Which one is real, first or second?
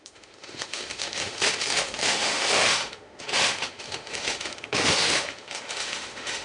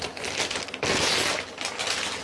second